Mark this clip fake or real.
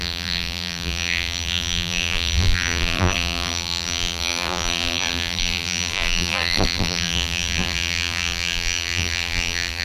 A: fake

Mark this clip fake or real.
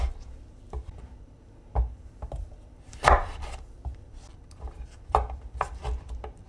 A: fake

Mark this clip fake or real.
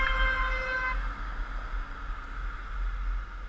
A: real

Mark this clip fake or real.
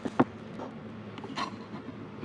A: real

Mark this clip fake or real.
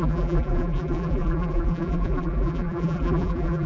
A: fake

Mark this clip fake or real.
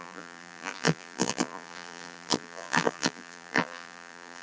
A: fake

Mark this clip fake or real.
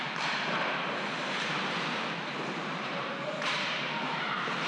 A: fake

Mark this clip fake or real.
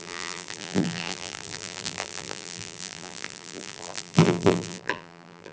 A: fake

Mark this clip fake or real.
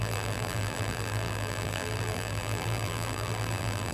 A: fake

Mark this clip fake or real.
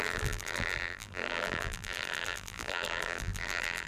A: fake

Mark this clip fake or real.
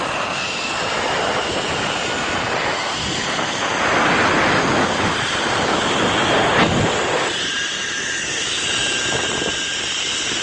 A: real